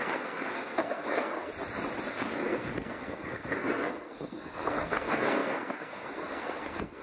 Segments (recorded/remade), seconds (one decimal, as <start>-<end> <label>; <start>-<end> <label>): 0.0-1.5 remade; 1.5-2.1 recorded; 2.1-7.0 remade